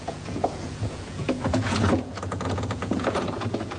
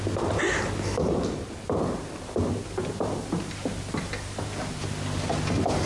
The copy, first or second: first